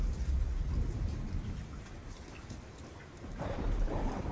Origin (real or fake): fake